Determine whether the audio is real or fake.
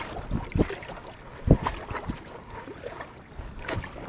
real